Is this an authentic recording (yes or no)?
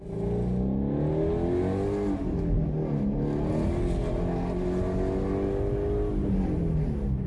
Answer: yes